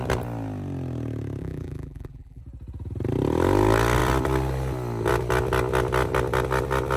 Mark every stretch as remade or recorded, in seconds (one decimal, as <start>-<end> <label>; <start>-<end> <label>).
0.0-1.4 recorded; 1.4-2.4 remade; 2.4-7.0 recorded